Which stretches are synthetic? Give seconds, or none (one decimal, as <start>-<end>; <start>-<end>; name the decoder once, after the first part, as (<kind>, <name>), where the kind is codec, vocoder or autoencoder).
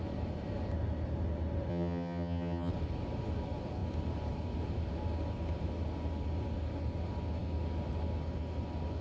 1.7-2.7 (vocoder, HiFi-GAN)